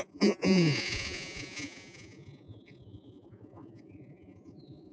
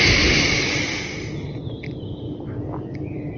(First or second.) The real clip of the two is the second